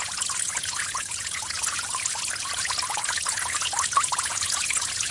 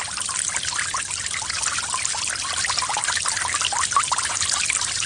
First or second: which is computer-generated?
first